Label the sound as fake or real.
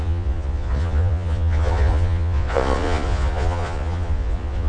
fake